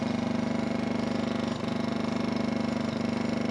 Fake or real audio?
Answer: real